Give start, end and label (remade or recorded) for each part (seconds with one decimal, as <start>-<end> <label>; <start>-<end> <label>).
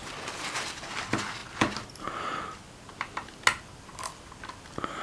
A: 0.0-5.0 recorded